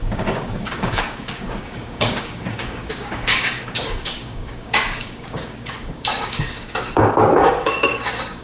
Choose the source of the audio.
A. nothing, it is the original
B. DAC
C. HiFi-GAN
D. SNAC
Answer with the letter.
B